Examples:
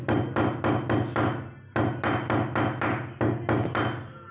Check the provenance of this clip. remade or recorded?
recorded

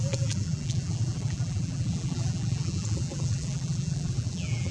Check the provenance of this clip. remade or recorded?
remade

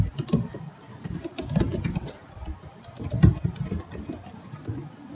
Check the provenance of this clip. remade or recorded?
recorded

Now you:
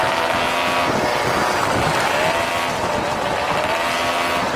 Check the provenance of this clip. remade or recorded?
recorded